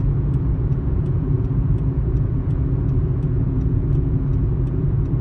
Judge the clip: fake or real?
fake